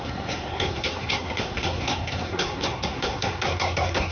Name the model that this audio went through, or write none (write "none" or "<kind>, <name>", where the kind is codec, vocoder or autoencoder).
codec, SNAC